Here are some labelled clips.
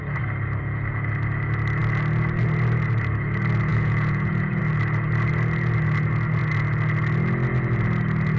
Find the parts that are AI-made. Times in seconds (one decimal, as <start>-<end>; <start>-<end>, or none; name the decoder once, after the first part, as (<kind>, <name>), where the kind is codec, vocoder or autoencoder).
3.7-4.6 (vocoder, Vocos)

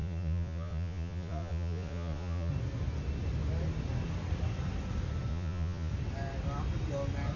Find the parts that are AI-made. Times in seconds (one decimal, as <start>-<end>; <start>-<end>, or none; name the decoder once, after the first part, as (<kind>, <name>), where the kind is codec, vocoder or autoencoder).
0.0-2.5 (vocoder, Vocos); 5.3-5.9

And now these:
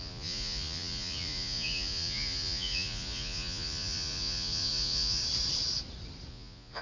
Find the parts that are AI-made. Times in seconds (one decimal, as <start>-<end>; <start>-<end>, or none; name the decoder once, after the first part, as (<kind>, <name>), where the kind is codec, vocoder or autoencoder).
0.0-5.2 (vocoder, Vocos); 6.3-6.8

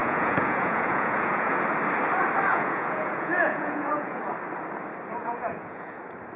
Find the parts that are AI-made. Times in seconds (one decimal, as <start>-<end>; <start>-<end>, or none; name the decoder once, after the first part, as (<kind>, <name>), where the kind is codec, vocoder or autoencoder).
0.0-1.6 (vocoder, Vocos); 2.5-4.2; 5.2-6.0

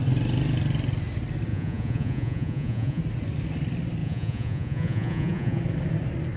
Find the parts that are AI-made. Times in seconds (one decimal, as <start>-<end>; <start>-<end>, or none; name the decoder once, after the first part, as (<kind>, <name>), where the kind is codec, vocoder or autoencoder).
1.5-3.0 (vocoder, Vocos); 4.0-5.6

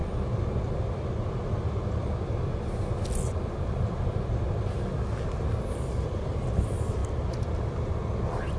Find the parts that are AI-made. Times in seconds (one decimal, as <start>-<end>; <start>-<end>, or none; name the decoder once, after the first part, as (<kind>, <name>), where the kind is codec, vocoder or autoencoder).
none